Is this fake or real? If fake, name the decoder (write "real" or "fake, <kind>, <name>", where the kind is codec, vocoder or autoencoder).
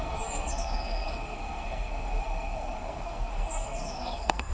fake, codec, SNAC